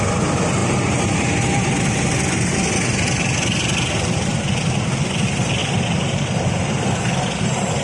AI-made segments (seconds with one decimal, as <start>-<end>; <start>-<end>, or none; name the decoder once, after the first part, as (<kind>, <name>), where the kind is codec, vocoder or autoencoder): 0.6-1.7 (vocoder, BigVGAN v2); 5.6-6.5